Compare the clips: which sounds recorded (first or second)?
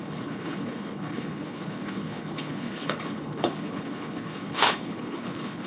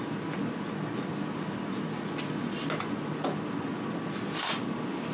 second